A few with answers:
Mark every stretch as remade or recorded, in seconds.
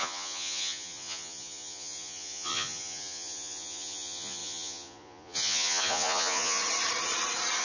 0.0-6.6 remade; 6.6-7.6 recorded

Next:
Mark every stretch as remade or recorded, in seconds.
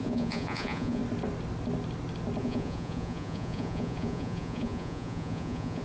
0.0-1.0 remade; 1.0-2.4 recorded; 2.4-5.8 remade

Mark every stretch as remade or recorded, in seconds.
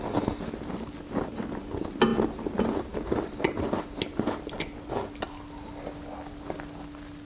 0.0-7.2 recorded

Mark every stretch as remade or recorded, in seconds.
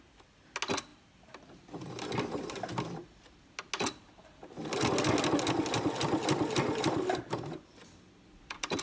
0.0-8.8 recorded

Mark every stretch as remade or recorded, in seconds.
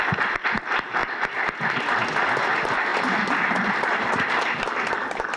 0.0-5.4 recorded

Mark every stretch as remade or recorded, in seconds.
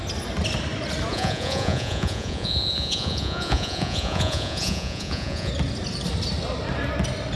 0.0-1.1 recorded; 1.1-5.5 remade; 5.5-7.4 recorded